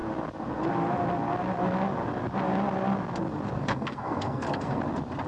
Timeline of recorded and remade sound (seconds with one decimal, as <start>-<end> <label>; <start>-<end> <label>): 0.0-3.6 recorded; 3.6-4.8 remade; 4.8-5.3 recorded